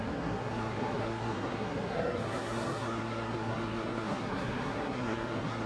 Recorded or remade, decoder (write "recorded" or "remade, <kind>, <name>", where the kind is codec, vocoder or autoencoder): remade, codec, SNAC